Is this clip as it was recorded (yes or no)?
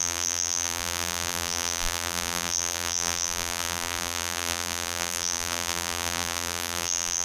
no